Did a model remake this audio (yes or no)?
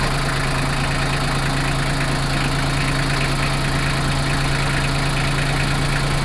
no